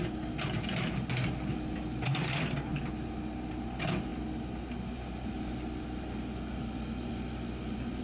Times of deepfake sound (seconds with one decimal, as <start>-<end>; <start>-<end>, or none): none